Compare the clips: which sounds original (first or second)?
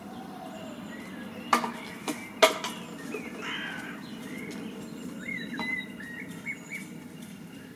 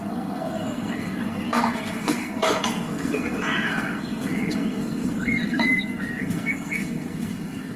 first